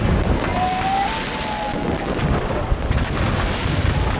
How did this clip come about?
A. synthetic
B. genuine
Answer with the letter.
B